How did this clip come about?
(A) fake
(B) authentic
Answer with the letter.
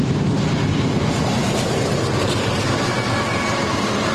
A